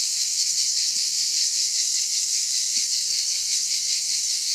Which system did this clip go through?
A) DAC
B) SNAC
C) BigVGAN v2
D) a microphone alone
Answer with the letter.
B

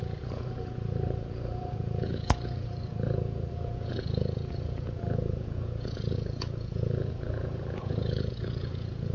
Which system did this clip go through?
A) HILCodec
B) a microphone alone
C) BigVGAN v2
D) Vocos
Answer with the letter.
D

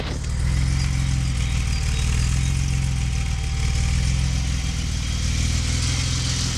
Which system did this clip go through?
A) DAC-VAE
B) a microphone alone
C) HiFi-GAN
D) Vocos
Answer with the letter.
B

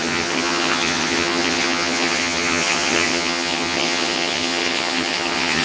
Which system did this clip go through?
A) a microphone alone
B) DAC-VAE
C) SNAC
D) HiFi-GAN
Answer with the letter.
D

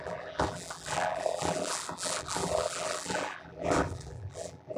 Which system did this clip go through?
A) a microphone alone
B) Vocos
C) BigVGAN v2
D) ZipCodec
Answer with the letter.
C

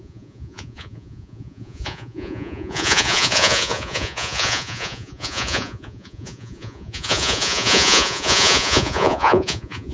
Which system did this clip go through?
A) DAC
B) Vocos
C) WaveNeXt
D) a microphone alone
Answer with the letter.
B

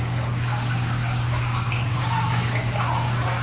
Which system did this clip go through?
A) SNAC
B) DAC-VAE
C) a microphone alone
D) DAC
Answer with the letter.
D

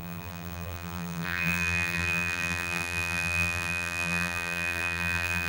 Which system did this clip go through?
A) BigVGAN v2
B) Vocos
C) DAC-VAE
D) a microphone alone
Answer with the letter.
A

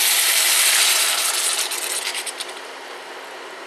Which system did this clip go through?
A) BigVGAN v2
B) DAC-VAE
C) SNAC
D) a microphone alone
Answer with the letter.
D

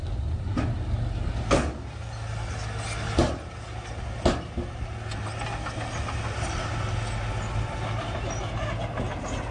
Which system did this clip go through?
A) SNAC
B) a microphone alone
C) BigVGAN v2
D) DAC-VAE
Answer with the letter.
B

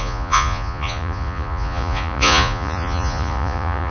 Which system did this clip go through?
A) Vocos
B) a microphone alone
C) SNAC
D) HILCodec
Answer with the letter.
A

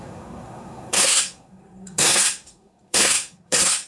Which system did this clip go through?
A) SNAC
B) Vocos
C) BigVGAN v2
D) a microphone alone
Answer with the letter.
A